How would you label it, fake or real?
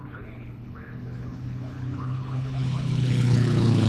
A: fake